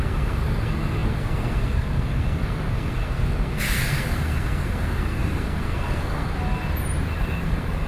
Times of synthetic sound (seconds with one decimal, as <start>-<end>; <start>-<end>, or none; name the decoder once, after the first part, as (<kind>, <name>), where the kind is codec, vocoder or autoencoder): 0.0-6.3 (codec, SNAC); 7.2-7.9